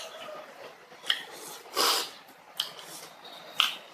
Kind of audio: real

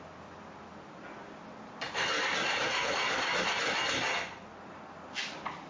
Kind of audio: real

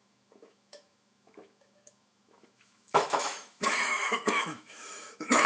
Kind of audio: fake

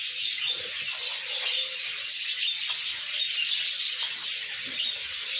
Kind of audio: real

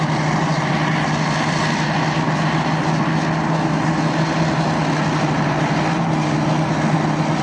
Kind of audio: real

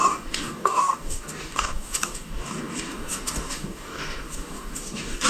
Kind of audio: fake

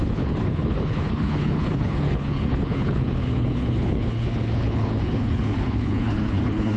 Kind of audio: fake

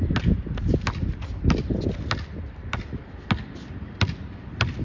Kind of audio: real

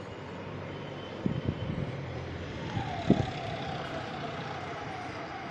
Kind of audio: fake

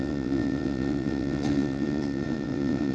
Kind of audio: fake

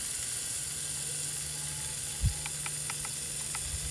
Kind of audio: real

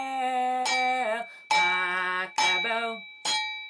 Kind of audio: real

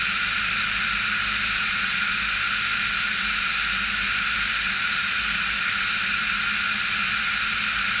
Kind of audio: real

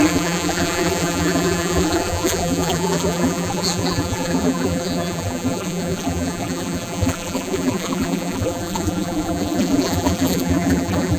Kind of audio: fake